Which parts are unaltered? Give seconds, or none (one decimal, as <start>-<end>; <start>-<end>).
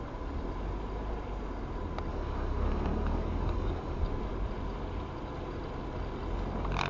0.0-2.1; 4.0-6.9